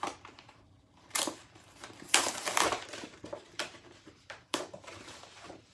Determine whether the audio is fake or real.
fake